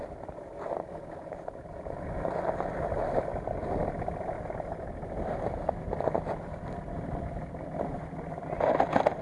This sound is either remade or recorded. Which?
recorded